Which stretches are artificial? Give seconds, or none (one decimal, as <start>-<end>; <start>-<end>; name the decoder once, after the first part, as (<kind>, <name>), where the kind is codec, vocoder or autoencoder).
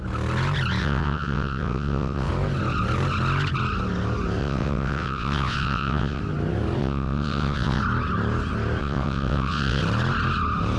0.8-2.3 (vocoder, WaveNeXt); 4.4-6.2; 6.8-7.8; 8.8-9.8